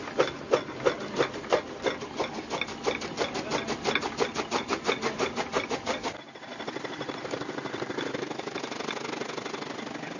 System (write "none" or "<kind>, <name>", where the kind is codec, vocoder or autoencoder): none